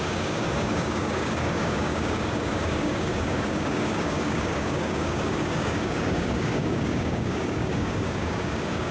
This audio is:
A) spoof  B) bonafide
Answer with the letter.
A